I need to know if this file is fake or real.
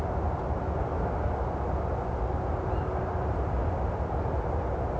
real